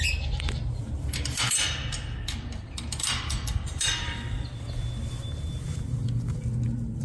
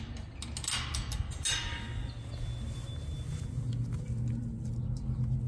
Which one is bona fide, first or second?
second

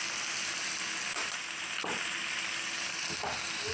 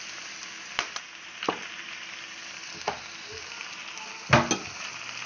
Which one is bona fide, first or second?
second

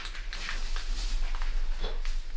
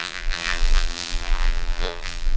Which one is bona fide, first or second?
first